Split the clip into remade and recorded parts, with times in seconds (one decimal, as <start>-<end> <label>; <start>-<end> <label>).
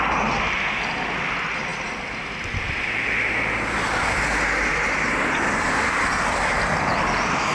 0.0-7.5 recorded